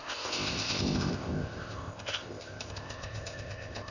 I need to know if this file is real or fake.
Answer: fake